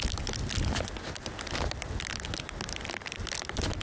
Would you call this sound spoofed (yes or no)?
no